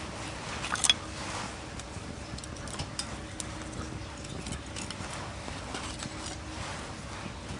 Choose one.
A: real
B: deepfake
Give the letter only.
A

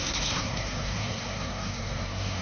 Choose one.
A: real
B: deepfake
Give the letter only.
B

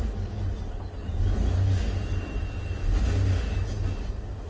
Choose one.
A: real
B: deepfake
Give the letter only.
A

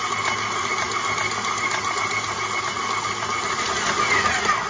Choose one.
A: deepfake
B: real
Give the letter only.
B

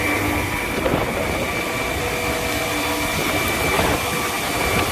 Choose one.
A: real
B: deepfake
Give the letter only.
A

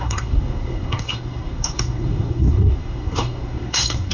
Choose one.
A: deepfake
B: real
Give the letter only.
A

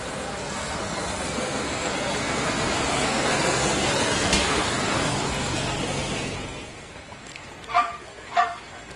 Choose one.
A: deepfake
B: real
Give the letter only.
A